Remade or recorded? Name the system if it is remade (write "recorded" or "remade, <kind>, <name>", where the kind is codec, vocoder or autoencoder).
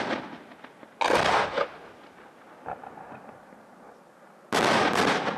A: recorded